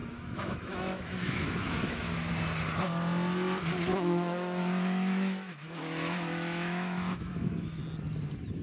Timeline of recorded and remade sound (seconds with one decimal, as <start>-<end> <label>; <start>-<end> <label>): 0.0-2.3 remade; 2.3-3.9 recorded; 3.9-7.8 remade; 7.8-8.6 recorded